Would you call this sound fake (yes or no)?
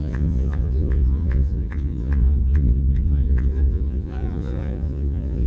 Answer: yes